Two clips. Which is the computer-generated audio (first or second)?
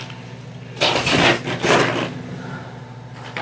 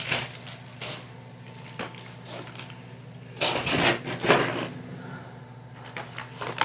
first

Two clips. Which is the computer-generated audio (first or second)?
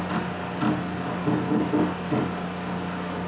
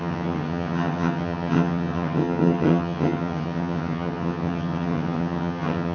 second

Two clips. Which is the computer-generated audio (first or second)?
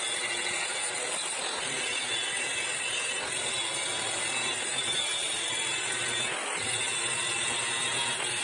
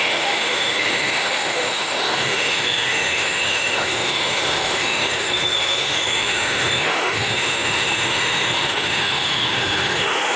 second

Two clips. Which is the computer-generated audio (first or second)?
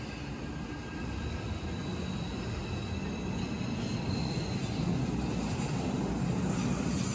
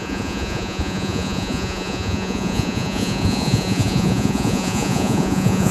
second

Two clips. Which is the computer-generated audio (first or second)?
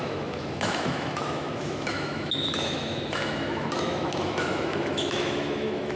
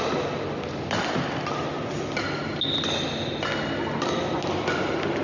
first